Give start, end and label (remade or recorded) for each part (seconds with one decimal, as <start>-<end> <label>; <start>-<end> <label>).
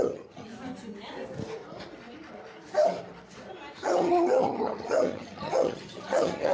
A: 0.0-0.5 remade; 0.5-3.8 recorded; 3.8-6.5 remade